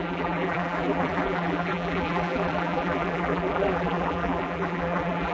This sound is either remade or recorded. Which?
remade